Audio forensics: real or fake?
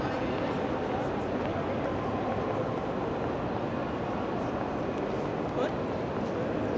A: real